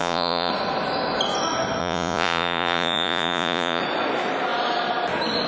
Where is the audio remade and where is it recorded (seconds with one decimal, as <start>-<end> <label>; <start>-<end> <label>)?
0.0-0.5 remade; 0.5-1.8 recorded; 1.8-3.8 remade; 3.8-5.5 recorded